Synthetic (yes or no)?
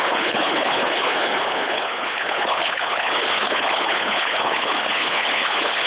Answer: yes